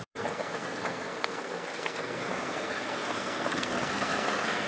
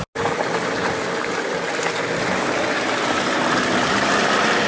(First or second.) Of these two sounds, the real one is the second